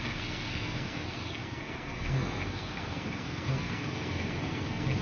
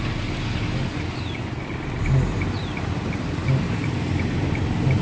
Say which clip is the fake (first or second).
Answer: first